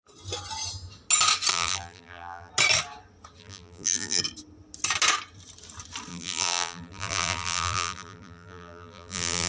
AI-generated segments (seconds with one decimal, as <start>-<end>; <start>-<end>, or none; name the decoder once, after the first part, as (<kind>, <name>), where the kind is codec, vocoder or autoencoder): 1.5-2.5 (vocoder, BigVGAN v2); 3.4-4.2; 6.1-9.5